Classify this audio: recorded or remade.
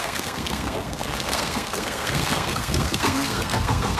remade